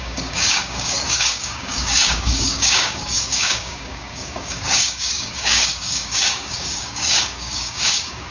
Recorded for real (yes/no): no